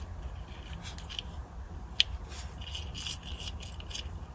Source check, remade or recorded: recorded